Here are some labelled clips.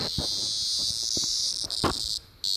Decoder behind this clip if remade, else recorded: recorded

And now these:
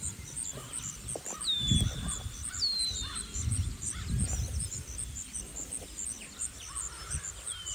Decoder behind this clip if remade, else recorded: recorded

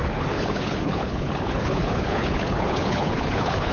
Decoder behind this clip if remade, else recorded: remade, codec, HILCodec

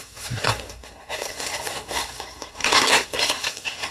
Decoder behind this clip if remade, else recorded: remade, codec, SNAC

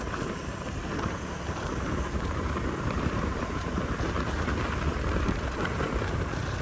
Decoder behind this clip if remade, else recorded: remade, vocoder, BigVGAN v2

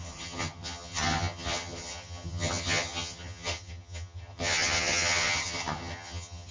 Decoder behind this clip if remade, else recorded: remade, vocoder, HiFi-GAN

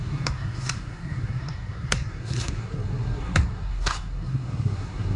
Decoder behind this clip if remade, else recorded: remade, codec, SNAC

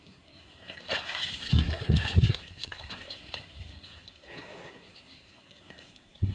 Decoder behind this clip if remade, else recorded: remade, codec, SNAC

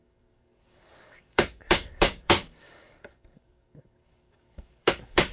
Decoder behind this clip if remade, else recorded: remade, codec, DAC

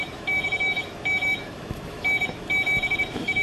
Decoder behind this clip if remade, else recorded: remade, autoencoder, DAC-VAE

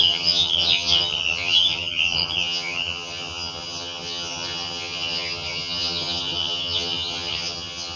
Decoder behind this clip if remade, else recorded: remade, vocoder, HiFi-GAN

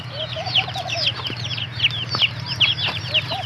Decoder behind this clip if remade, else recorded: remade, vocoder, BigVGAN v2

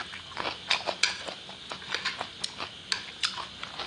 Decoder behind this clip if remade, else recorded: recorded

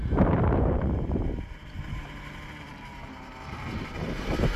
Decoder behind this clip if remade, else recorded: remade, vocoder, BigVGAN v2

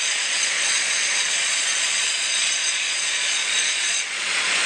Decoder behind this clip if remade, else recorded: remade, vocoder, Vocos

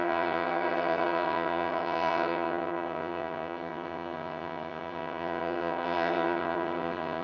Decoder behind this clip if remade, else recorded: remade, vocoder, HiFi-GAN